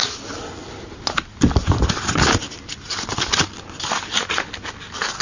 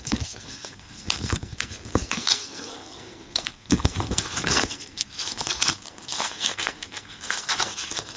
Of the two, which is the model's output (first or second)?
second